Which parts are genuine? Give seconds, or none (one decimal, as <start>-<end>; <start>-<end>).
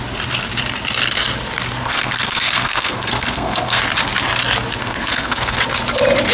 0.0-1.8; 3.8-4.8; 5.6-6.3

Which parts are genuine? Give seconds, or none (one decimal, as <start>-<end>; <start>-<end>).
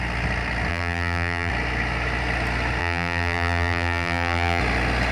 0.0-0.7; 1.5-2.8; 4.6-5.1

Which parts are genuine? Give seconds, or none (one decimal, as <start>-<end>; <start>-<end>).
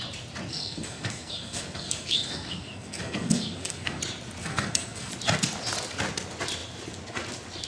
0.0-0.5; 4.0-4.4; 5.1-7.7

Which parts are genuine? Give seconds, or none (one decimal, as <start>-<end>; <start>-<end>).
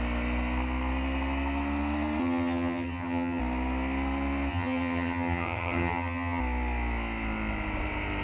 0.0-2.2; 3.4-4.5; 6.4-8.2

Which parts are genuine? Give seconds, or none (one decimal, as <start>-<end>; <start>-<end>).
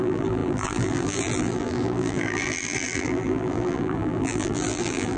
none